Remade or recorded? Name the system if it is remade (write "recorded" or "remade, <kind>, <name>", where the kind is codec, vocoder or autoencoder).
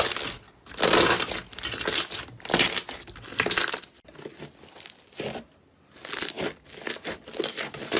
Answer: recorded